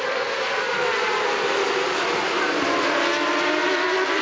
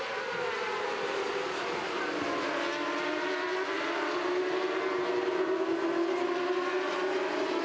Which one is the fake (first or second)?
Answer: first